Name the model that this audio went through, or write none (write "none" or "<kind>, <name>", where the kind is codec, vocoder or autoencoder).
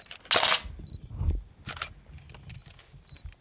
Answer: none